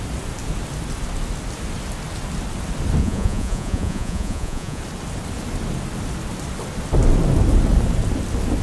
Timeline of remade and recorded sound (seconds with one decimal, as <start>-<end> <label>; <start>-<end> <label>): 0.0-3.0 recorded; 3.0-4.8 remade; 4.8-8.6 recorded